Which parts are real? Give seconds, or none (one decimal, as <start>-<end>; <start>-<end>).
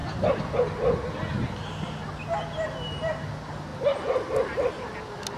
0.0-5.4